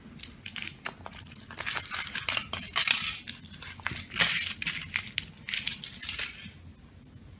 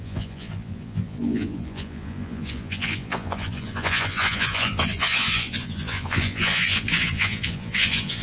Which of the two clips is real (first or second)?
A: first